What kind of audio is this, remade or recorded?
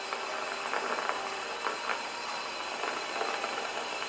recorded